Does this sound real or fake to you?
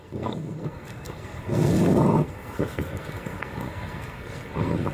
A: fake